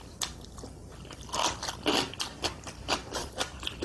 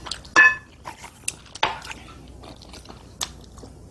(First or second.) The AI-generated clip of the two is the first